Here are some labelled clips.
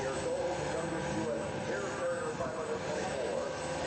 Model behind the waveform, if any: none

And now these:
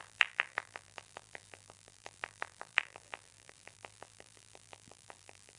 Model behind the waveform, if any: vocoder, BigVGAN v2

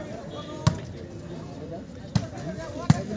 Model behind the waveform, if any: none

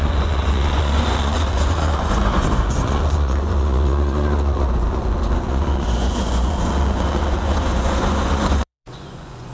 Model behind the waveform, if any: vocoder, Vocos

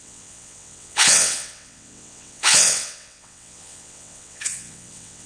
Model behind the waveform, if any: vocoder, WaveNeXt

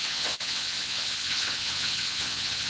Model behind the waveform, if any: vocoder, WaveNeXt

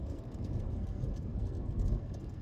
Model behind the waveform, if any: codec, SNAC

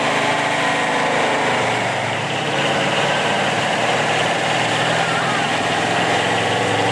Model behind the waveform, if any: vocoder, BigVGAN v2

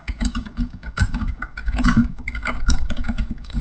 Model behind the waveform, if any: codec, DAC